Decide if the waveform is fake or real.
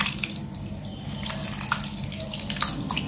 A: real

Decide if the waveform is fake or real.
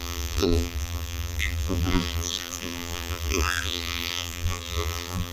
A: fake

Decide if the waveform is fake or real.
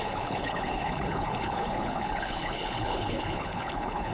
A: fake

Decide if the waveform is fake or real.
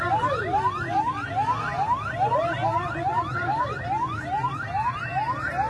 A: real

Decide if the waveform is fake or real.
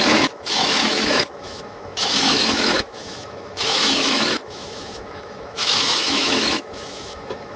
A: fake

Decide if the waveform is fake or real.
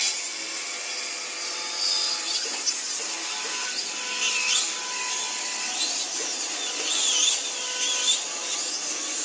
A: real